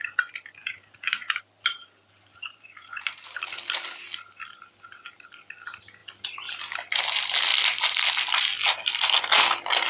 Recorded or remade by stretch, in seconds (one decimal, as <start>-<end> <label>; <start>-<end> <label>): 0.0-0.6 recorded; 0.6-3.5 remade; 3.5-9.9 recorded